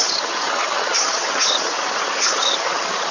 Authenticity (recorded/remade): remade